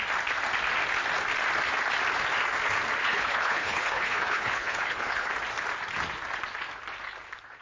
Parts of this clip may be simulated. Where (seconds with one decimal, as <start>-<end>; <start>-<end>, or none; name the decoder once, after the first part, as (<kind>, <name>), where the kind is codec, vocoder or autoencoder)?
3.0-5.3 (codec, HILCodec)